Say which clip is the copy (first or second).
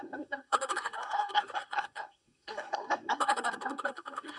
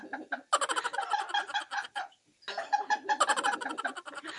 first